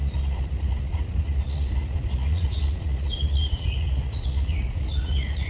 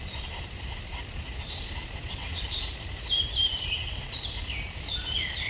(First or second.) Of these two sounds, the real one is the second